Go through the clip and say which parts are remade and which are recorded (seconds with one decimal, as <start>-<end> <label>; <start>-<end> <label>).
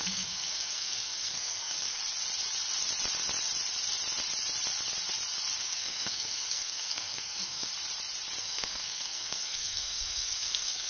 0.0-2.0 remade; 2.0-5.6 recorded; 5.6-7.7 remade; 7.7-8.4 recorded; 8.4-10.9 remade